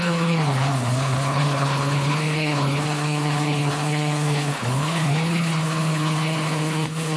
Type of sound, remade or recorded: remade